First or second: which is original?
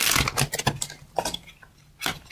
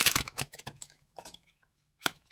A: first